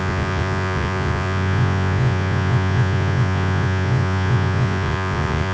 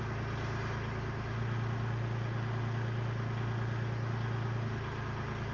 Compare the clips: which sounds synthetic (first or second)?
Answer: first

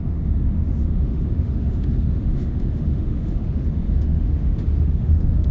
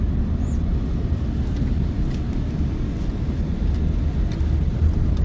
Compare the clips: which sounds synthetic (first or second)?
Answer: first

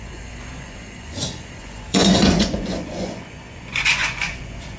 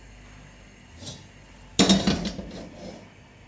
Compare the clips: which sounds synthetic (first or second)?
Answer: first